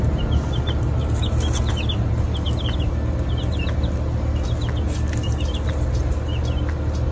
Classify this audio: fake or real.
real